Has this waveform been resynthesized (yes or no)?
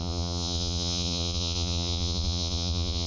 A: yes